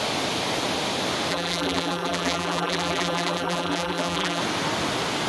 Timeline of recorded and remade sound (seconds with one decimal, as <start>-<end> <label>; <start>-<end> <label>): 0.0-1.3 recorded; 1.3-4.4 remade; 4.4-5.3 recorded